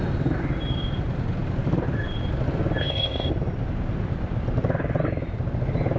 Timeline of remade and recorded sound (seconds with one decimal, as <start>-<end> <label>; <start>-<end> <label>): 0.0-2.8 recorded; 2.8-3.3 remade; 3.3-6.0 recorded